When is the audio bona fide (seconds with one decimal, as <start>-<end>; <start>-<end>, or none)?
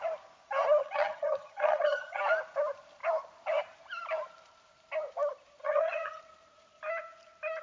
0.0-0.8; 2.2-5.6; 6.2-7.6